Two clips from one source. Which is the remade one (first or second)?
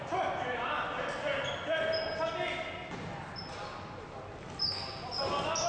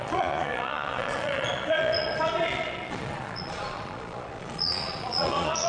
second